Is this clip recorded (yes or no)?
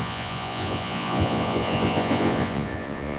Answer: no